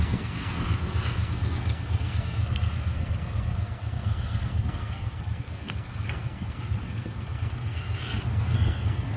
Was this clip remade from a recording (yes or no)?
yes